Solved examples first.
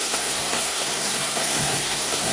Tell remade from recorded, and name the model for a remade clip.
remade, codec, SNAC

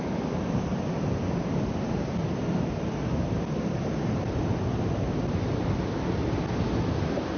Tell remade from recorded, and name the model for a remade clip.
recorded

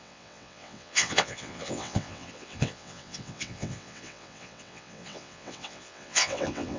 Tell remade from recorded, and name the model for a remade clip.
remade, vocoder, WaveNeXt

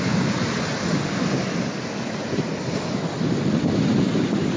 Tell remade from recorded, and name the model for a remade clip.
recorded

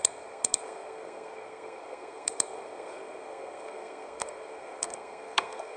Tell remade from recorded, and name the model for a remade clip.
remade, codec, SNAC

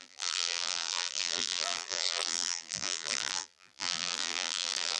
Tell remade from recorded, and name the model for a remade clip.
remade, vocoder, BigVGAN v2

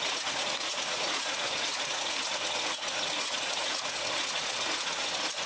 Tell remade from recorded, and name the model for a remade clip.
remade, vocoder, Vocos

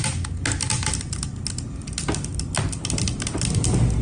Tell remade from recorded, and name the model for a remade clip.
recorded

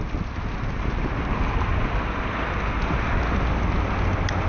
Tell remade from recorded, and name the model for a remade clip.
recorded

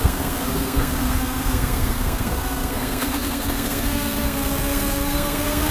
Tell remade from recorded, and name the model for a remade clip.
remade, codec, SNAC